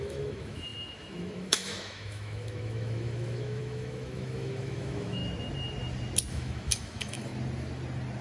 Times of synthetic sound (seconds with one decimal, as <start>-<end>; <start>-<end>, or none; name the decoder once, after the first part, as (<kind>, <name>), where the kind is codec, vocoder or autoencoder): 0.0-5.2 (autoencoder, DAC-VAE); 6.3-7.3